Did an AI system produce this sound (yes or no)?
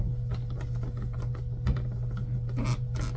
no